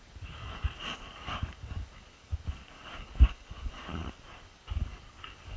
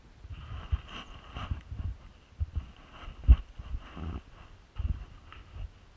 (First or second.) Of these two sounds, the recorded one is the second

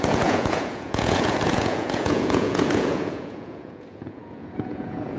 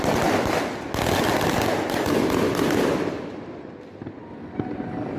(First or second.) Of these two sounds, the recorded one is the second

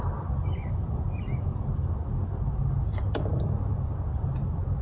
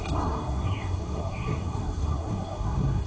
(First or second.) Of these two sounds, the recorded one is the first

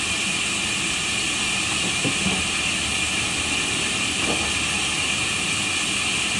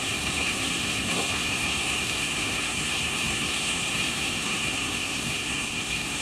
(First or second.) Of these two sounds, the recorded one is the first